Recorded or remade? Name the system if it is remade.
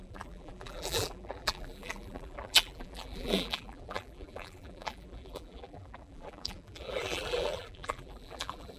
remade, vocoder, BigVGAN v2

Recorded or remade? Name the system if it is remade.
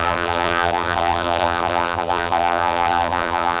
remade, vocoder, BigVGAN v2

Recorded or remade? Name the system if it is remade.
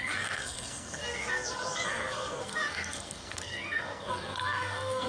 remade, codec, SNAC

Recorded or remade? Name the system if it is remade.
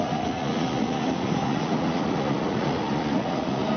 remade, vocoder, Vocos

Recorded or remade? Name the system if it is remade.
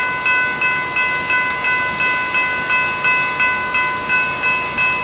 recorded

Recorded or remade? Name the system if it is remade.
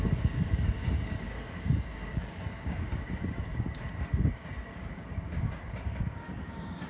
remade, codec, DAC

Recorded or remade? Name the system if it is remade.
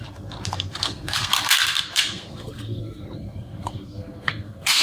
remade, codec, SNAC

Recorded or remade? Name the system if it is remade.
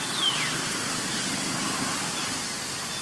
recorded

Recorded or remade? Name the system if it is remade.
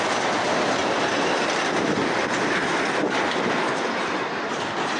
recorded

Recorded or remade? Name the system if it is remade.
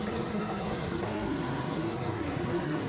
remade, codec, SNAC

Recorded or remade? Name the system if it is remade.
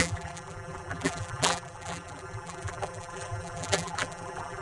remade, vocoder, BigVGAN v2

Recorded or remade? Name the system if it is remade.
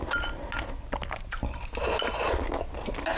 recorded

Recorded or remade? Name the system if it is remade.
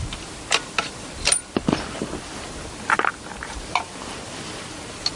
recorded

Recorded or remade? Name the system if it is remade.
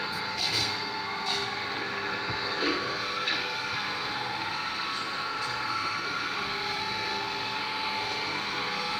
remade, codec, SNAC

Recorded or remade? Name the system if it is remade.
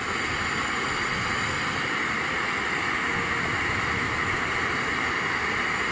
recorded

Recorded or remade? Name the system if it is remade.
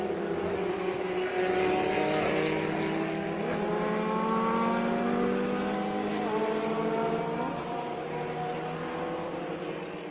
recorded